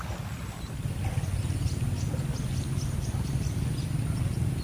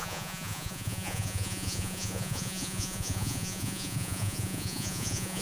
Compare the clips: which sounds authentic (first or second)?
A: first